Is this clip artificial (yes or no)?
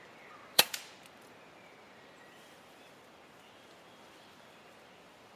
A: yes